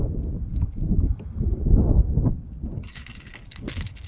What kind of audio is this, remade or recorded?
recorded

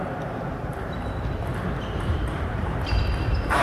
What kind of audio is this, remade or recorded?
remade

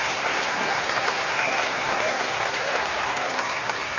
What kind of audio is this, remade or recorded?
remade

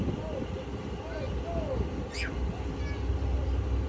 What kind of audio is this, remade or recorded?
recorded